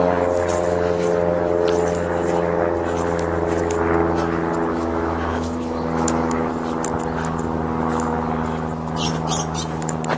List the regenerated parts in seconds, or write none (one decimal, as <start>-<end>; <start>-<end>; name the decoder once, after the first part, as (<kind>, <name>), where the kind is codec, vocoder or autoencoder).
4.7-6.5 (autoencoder, DAC-VAE)